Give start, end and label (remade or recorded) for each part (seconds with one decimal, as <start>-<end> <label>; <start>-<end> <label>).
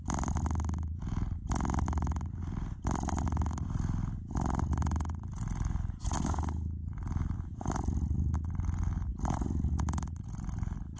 0.0-11.0 recorded